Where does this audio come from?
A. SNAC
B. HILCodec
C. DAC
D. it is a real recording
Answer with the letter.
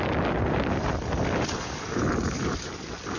D